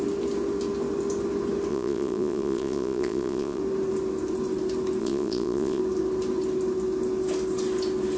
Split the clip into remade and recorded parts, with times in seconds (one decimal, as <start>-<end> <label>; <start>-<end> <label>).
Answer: 0.0-1.7 recorded; 1.7-3.6 remade; 3.6-5.0 recorded; 5.0-5.8 remade; 5.8-8.2 recorded